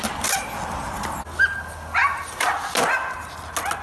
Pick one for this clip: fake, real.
real